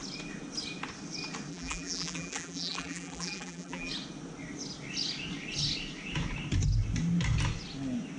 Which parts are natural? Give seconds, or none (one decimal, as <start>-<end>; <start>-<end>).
0.0-1.5; 3.9-8.2